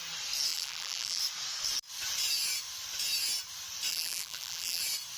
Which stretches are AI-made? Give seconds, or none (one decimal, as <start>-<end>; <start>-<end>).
0.5-1.2; 3.9-4.8